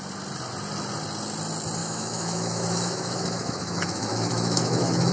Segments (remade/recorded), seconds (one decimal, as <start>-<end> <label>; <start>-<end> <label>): 0.0-1.8 recorded; 1.8-5.1 remade